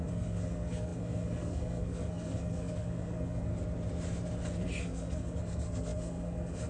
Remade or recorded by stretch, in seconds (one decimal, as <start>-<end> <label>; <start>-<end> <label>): 0.0-3.5 remade; 3.5-4.8 recorded; 4.8-6.7 remade